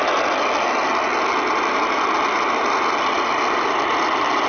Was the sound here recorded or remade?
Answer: recorded